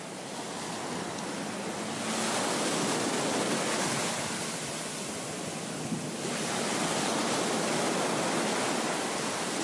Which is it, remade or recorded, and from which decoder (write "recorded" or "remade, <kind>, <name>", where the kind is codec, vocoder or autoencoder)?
recorded